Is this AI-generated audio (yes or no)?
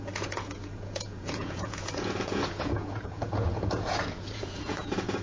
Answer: yes